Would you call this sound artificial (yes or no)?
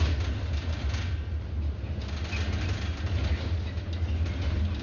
no